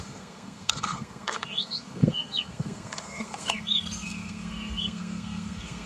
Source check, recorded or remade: remade